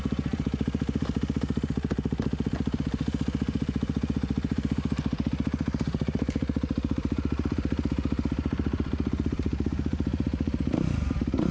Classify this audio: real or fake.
fake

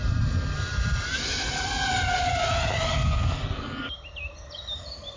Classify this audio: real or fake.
fake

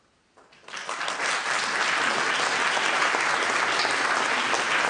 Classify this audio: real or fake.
real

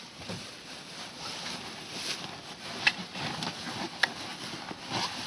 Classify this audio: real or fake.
real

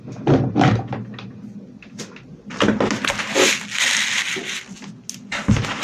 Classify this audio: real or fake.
real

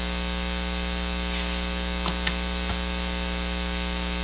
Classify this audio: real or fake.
real